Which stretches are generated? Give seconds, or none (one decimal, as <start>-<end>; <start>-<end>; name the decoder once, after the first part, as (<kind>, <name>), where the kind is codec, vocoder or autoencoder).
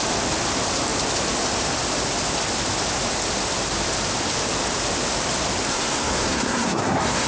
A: 5.7-7.3 (codec, SNAC)